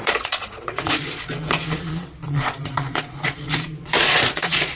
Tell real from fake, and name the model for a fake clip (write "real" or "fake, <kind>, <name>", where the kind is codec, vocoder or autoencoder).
fake, vocoder, Vocos